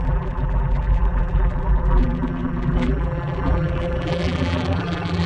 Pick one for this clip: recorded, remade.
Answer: remade